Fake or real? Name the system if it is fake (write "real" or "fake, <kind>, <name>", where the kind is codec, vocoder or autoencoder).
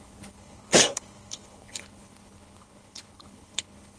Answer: fake, codec, HILCodec